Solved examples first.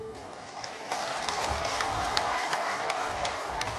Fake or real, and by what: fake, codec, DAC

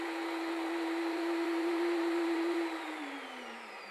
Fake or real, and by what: fake, vocoder, BigVGAN v2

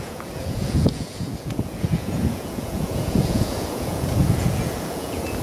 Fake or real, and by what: fake, vocoder, Vocos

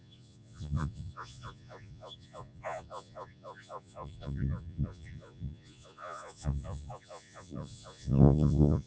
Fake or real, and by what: fake, vocoder, Vocos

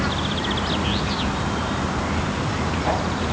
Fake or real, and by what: real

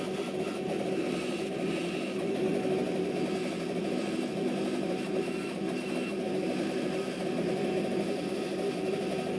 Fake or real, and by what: real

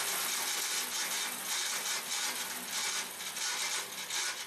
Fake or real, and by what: real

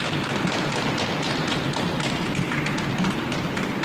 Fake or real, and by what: real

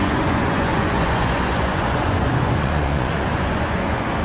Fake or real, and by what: fake, vocoder, Vocos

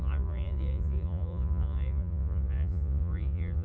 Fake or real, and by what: fake, vocoder, Vocos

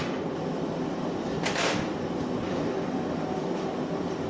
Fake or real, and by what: fake, vocoder, BigVGAN v2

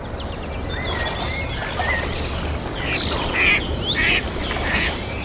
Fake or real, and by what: real